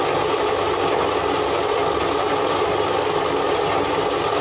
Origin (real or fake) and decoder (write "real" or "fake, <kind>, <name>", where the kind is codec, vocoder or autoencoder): real